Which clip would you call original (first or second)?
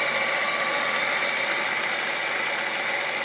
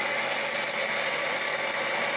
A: second